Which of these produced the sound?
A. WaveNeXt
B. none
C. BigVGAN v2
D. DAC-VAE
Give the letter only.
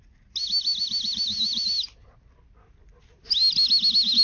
B